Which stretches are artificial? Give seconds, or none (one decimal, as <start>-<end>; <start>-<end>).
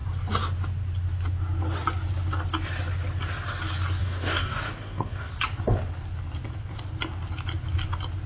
4.0-5.3